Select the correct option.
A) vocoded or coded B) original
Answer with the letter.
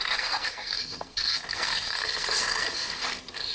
A